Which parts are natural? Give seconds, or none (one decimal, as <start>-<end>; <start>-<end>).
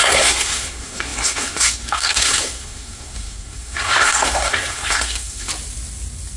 5.5-6.4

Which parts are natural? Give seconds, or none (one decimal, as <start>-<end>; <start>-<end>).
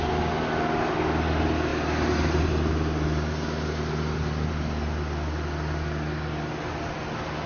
0.0-7.5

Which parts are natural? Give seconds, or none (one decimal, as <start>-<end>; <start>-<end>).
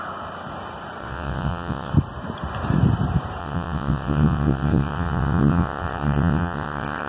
0.0-1.0; 1.9-3.4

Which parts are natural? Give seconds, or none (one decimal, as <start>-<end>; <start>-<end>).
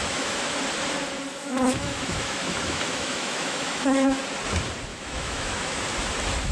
0.6-1.3; 4.2-4.9; 5.8-6.5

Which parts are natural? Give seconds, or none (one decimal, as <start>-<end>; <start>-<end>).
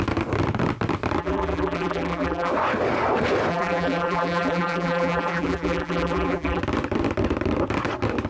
0.0-1.2; 2.5-3.5; 6.6-8.3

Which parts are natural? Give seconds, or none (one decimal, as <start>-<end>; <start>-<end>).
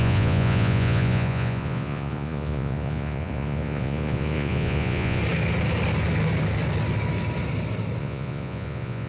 5.2-8.0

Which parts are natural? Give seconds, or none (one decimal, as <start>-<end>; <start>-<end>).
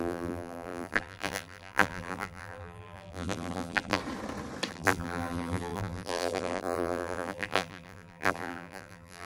4.0-4.7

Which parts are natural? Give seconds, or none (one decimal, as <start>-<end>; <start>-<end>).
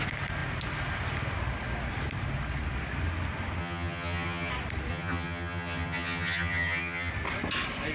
0.0-3.6; 4.5-4.9; 7.1-7.9